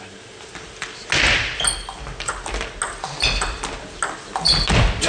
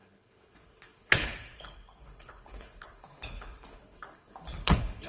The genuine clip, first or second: first